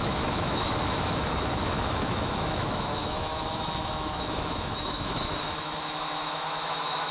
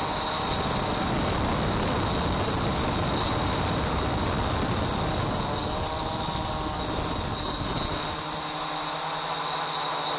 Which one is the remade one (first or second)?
first